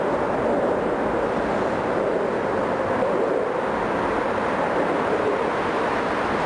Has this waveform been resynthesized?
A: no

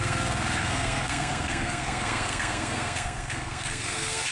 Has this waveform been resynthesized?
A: yes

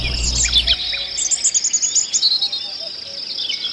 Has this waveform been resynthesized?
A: no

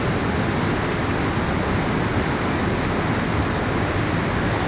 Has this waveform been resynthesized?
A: no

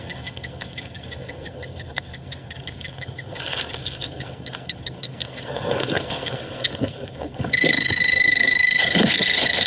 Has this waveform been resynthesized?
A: yes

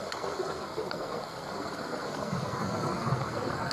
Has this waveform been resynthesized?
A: yes